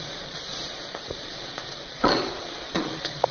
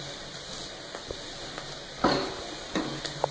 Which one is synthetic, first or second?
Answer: first